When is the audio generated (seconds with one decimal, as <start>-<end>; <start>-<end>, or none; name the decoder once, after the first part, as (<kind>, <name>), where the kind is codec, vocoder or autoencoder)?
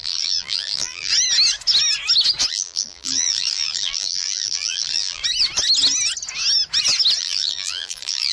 0.0-1.1 (vocoder, BigVGAN v2); 2.5-5.2; 7.2-8.3